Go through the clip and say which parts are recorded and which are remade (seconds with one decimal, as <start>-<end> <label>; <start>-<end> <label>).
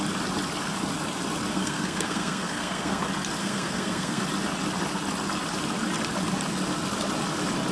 0.0-1.5 recorded; 1.5-3.0 remade; 3.0-3.4 recorded; 3.4-4.2 remade; 4.2-7.7 recorded